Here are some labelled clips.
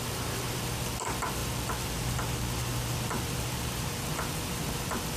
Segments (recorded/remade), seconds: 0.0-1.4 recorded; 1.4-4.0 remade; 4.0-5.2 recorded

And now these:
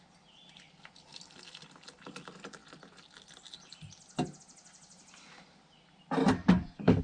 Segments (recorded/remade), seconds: 0.0-6.2 recorded; 6.2-7.0 remade

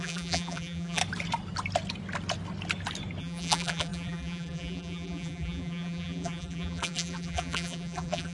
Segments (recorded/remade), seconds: 0.0-1.0 remade; 1.0-3.2 recorded; 3.2-8.3 remade